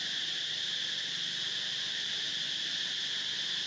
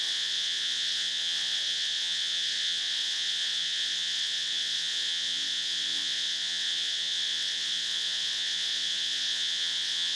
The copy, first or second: second